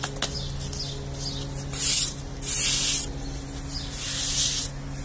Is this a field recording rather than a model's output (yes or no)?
yes